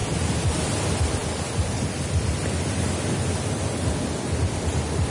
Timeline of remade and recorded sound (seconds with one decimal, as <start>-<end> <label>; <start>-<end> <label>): 0.0-5.1 recorded